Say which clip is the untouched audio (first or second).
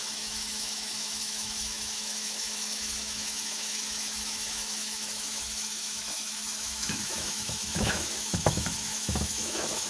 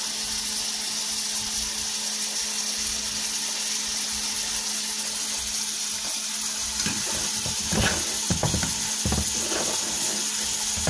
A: second